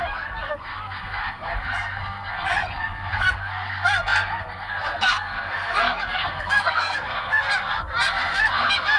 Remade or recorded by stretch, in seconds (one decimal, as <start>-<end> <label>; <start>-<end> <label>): 0.0-9.0 remade